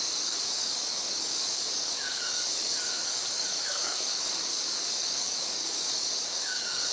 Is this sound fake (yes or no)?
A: yes